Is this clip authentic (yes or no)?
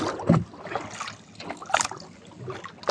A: yes